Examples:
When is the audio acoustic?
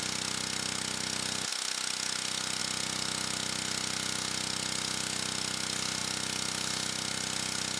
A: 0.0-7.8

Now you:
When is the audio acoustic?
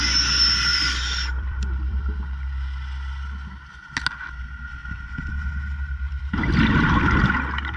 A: 0.0-0.7; 2.0-7.8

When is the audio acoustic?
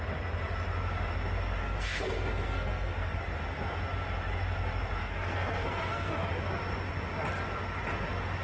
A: 0.0-1.6; 3.2-5.0; 6.3-8.4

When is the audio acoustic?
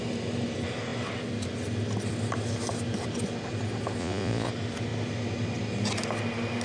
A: 0.0-4.0; 4.5-6.6